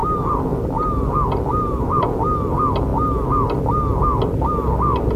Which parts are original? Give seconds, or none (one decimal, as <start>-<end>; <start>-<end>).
1.1-1.5; 2.1-5.2